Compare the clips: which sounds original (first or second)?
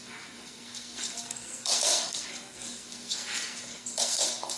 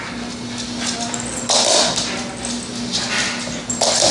second